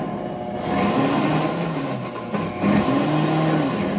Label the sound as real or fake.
real